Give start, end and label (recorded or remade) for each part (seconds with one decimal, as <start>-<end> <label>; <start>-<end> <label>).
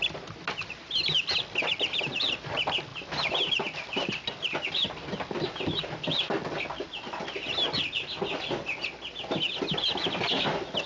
0.0-10.9 recorded